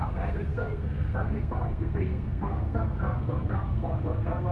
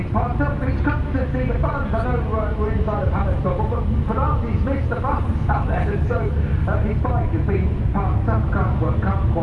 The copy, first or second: first